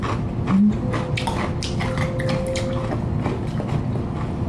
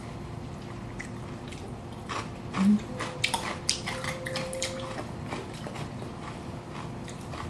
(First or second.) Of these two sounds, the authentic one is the first